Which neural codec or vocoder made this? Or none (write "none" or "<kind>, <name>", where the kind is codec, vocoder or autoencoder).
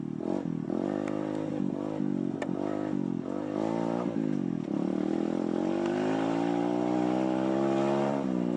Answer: vocoder, BigVGAN v2